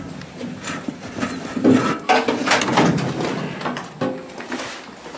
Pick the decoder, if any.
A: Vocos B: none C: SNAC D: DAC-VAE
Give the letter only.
B